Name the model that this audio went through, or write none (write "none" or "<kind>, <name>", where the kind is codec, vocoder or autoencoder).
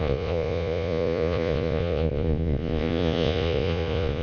vocoder, Vocos